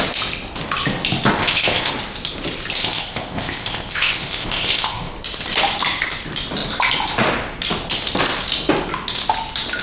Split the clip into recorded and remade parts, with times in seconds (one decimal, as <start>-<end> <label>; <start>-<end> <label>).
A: 0.0-1.4 recorded; 1.4-1.9 remade; 1.9-2.8 recorded; 2.8-5.1 remade; 5.1-9.8 recorded